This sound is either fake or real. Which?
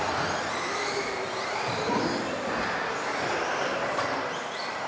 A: real